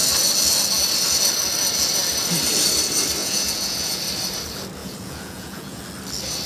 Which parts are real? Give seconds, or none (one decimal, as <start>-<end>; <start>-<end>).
0.0-3.2; 4.0-4.8; 5.8-6.5